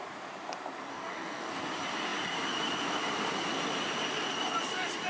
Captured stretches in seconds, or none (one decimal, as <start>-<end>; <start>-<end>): 0.0-0.9; 1.5-5.1